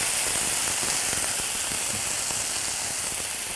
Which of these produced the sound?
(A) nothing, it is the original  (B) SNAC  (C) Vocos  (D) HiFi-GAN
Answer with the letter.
A